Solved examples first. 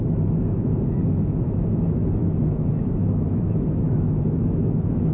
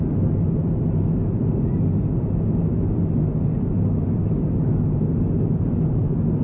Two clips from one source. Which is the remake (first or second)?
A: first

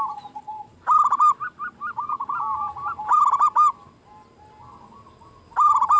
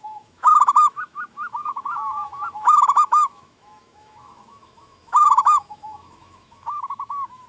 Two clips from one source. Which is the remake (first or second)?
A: second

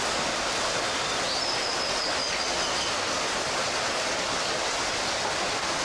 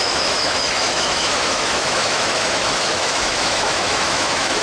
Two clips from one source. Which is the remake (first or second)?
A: second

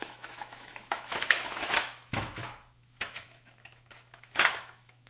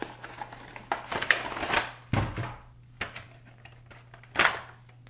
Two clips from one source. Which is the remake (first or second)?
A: first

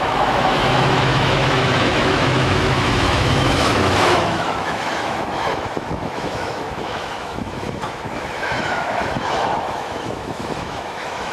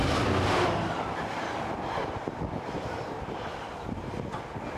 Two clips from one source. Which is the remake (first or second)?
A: first